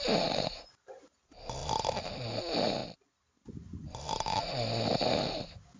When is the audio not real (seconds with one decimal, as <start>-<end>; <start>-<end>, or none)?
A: none